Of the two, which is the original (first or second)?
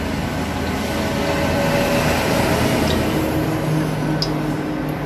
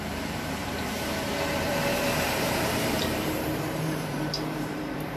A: first